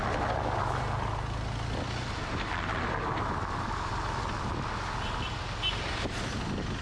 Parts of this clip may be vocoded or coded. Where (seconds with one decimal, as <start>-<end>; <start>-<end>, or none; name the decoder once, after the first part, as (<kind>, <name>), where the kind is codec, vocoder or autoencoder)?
none